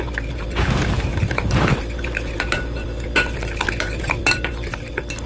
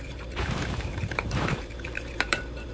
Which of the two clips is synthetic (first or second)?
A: second